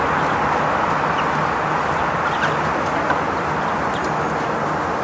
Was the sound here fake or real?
real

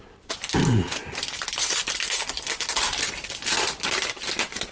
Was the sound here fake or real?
real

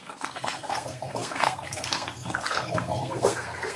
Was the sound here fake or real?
fake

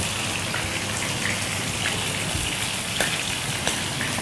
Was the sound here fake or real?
real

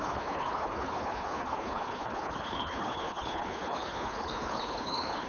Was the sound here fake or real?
fake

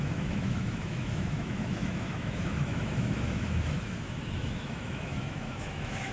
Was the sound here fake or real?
fake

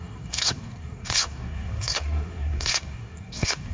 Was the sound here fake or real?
fake